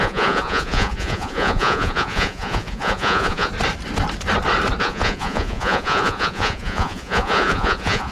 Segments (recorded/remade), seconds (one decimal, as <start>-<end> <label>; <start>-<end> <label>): 0.0-3.5 remade; 3.5-4.8 recorded; 4.8-8.1 remade